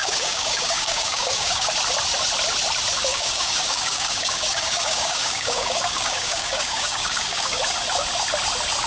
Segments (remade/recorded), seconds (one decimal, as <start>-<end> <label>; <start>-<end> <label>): 0.0-1.7 remade; 1.7-3.1 recorded; 3.1-7.6 remade; 7.6-8.9 recorded

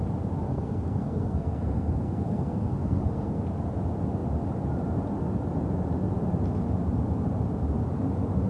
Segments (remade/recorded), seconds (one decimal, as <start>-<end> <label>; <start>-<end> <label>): 0.0-0.5 recorded; 0.5-3.4 remade; 3.4-8.5 recorded